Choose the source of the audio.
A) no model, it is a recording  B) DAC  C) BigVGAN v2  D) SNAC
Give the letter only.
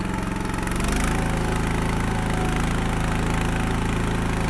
A